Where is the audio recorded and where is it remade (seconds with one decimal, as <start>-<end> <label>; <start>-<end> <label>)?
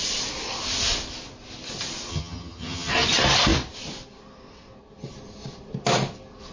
0.0-2.1 recorded; 2.1-2.9 remade; 2.9-6.5 recorded